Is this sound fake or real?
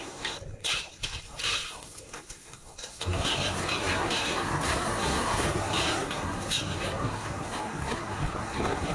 fake